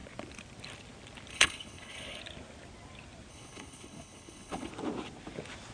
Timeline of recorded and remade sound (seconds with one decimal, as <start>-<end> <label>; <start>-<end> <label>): 0.0-1.3 recorded; 1.3-2.2 remade; 2.2-3.3 recorded; 3.3-4.7 remade; 4.7-5.7 recorded